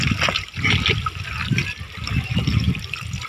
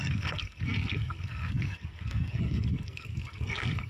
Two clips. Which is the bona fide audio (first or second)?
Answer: first